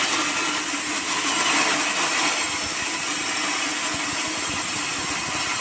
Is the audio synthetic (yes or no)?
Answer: no